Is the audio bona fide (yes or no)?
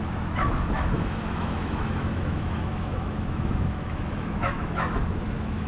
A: no